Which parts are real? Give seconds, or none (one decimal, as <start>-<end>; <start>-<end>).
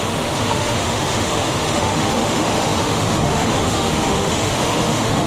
none